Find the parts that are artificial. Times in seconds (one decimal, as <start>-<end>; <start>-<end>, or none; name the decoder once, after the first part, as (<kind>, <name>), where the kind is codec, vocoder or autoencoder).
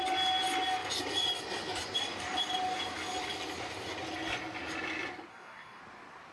5.3-5.8 (codec, DAC)